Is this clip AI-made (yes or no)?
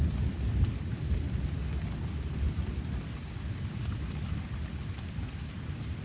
no